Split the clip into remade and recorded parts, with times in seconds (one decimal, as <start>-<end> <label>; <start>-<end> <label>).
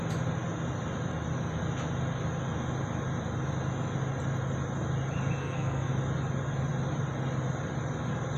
0.0-5.4 recorded; 5.4-5.9 remade; 5.9-8.4 recorded